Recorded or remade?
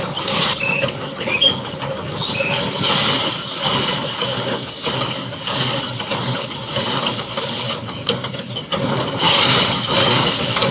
remade